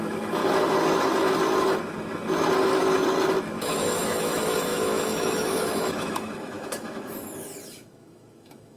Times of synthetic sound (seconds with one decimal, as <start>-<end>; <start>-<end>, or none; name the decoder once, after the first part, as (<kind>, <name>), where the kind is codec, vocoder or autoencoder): 0.0-0.4 (autoencoder, DAC-VAE); 3.4-8.8